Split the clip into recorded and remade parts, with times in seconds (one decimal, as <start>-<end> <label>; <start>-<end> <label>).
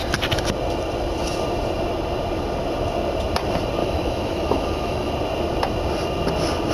0.0-3.8 recorded; 3.8-5.1 remade; 5.1-6.7 recorded